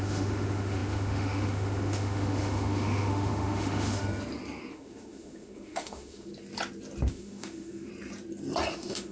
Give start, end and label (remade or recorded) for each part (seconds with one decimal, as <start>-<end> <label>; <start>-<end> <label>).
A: 0.0-4.0 remade; 4.0-4.7 recorded; 4.7-6.3 remade; 6.3-7.1 recorded; 7.1-7.9 remade; 7.9-8.7 recorded; 8.7-9.1 remade